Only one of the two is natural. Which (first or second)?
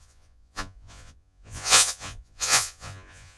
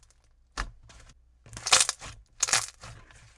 second